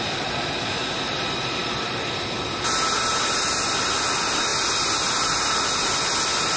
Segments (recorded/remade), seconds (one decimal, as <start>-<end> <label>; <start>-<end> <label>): 0.0-6.6 recorded